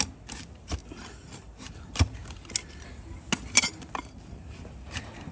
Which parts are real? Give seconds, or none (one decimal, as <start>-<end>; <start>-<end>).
0.0-5.3